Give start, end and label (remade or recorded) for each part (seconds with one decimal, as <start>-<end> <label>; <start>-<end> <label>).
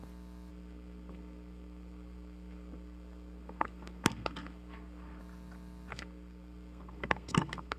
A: 0.0-0.5 recorded; 0.5-5.2 remade; 5.2-5.9 recorded; 5.9-7.8 remade